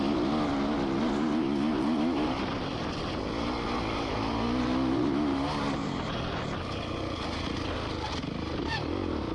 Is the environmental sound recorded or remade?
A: recorded